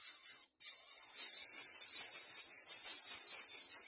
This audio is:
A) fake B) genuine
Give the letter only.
B